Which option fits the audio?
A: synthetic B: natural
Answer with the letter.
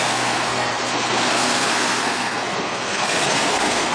A